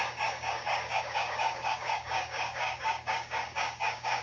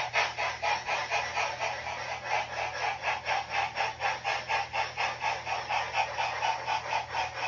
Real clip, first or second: second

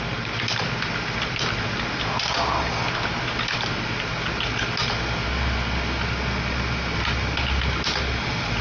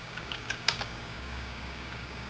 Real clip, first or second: first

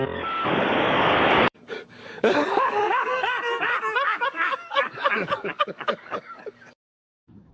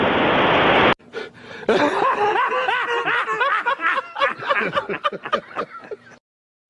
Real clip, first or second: second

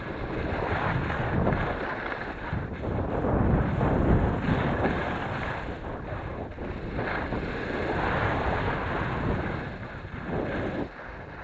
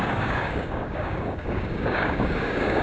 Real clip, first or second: first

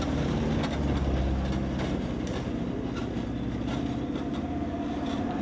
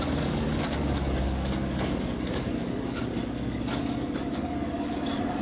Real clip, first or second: first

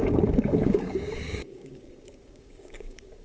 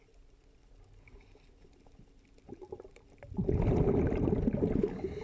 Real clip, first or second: second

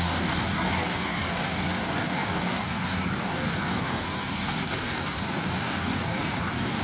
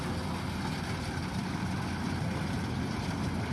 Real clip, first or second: second